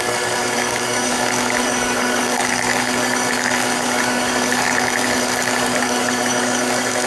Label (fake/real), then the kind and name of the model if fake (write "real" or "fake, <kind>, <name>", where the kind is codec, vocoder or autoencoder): fake, codec, DAC